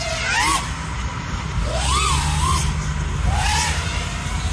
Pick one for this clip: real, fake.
real